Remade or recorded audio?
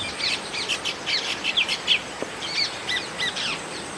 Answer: recorded